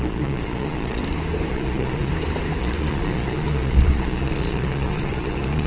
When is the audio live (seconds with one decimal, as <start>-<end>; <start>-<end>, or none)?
1.0-1.5; 2.1-2.6